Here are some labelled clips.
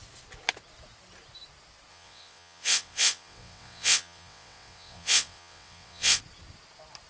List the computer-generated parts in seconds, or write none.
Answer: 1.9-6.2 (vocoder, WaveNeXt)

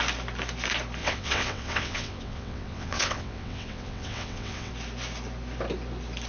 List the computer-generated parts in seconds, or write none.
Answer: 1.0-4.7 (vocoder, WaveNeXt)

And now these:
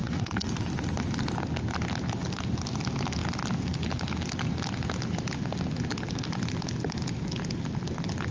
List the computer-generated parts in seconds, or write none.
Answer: 0.0-0.7 (vocoder, WaveNeXt)

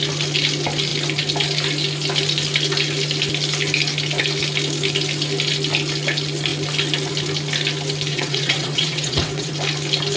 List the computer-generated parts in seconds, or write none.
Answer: 8.1-9.5 (vocoder, WaveNeXt)

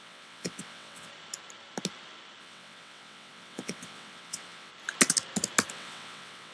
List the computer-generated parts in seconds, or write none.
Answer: 0.0-1.1 (vocoder, WaveNeXt); 2.4-4.7; 5.7-6.5

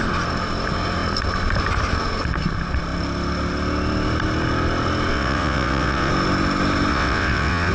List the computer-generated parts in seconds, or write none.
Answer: 5.1-6.1 (vocoder, WaveNeXt); 6.9-7.7

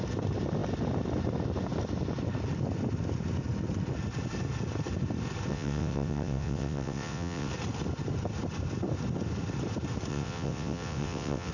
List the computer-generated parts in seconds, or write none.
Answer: 5.5-7.5 (vocoder, WaveNeXt); 10.1-11.5

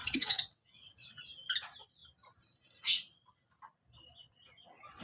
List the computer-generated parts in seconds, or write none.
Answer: 0.0-1.2 (vocoder, WaveNeXt)